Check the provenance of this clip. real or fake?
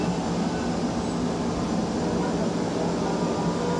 real